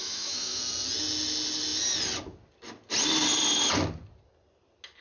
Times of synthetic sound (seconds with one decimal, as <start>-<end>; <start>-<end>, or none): 0.0-0.6